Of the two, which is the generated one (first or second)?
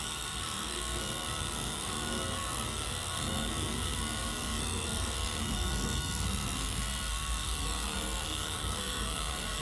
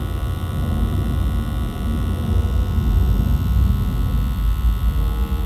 first